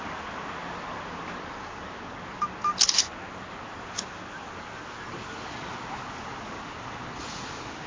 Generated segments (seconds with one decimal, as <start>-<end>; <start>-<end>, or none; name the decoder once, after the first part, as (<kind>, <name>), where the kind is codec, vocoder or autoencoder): none